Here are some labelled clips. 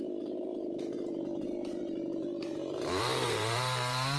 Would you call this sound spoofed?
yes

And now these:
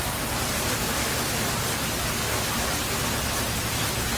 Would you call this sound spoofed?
no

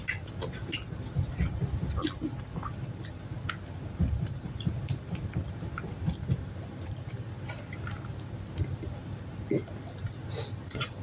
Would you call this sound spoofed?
no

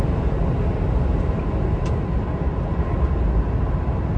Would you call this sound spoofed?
no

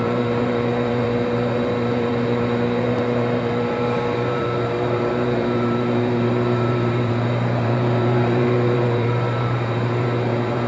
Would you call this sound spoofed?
yes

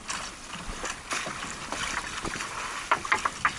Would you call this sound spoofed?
no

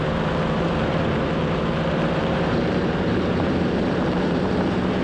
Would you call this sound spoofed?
yes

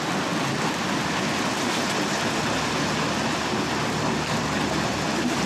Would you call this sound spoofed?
no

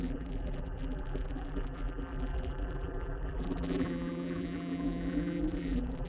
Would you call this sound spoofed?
yes